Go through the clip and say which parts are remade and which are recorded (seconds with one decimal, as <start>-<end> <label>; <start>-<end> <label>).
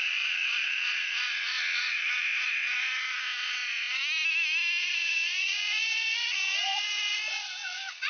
0.0-4.0 remade; 4.0-4.8 recorded; 4.8-8.1 remade